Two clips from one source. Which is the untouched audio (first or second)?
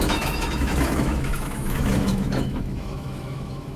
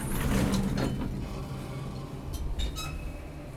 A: second